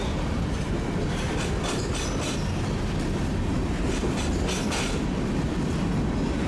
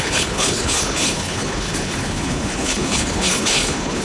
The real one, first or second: first